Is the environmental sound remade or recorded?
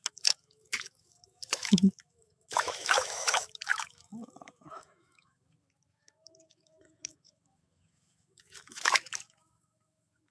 remade